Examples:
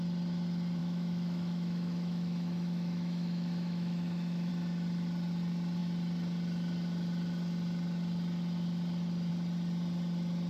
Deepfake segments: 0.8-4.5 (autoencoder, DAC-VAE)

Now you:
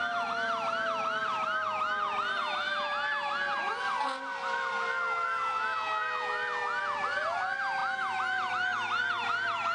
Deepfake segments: none